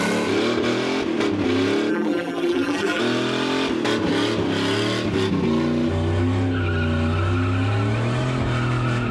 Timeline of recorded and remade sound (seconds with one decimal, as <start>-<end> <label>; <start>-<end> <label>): 0.0-1.9 recorded; 1.9-3.0 remade; 3.0-9.1 recorded